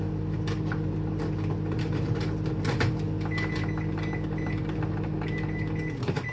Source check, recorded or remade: recorded